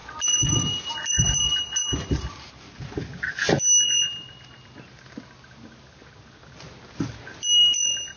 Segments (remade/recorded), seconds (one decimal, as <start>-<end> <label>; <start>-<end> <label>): 0.0-1.8 recorded; 1.8-2.5 remade; 2.5-8.2 recorded